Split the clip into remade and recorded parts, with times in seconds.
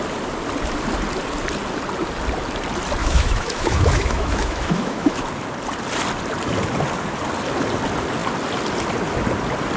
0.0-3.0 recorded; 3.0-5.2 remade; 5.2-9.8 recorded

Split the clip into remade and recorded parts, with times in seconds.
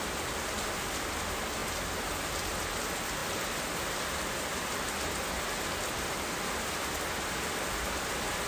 0.0-8.5 recorded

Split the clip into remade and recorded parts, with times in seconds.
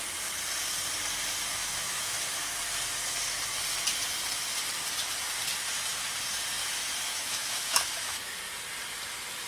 0.0-1.6 recorded; 1.6-2.6 remade; 2.6-6.6 recorded; 6.6-8.4 remade; 8.4-9.5 recorded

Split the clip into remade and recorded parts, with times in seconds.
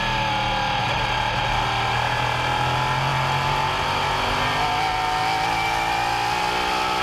0.0-7.0 recorded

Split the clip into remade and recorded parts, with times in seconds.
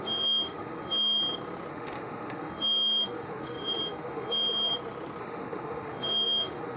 0.0-1.2 remade; 1.2-1.7 recorded; 1.7-4.7 remade; 4.7-5.2 recorded; 5.2-6.8 remade